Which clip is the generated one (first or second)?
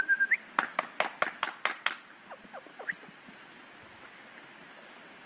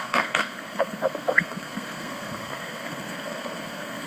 second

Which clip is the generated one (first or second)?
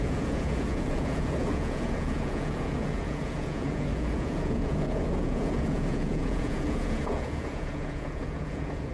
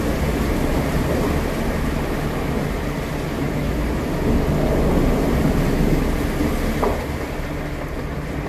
first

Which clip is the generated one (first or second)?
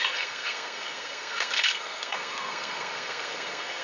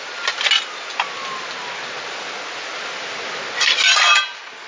first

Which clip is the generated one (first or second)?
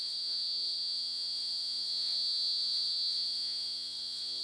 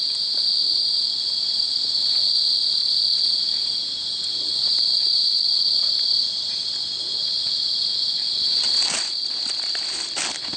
first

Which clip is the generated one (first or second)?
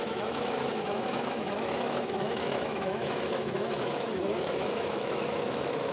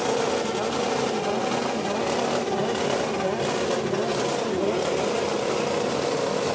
first